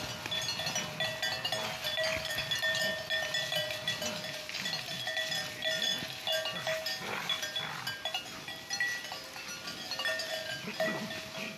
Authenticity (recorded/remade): recorded